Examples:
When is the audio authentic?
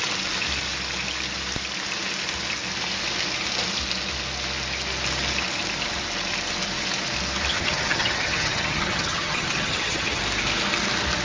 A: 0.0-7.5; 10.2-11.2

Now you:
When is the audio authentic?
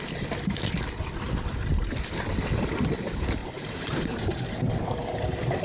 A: 0.0-3.4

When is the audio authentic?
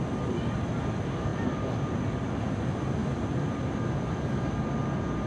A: 0.0-5.3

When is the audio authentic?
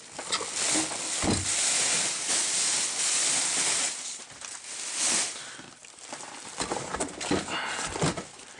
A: 0.0-5.8; 6.9-8.6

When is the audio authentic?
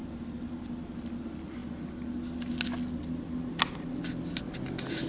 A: 0.0-5.1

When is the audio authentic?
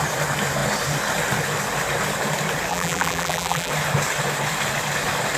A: 0.0-2.7; 3.7-5.4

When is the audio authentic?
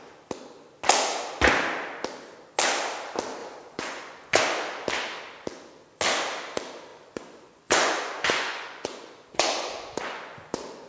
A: 0.0-3.4; 4.4-6.9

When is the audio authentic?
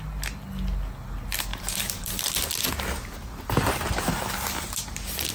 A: 0.0-1.5; 2.4-5.3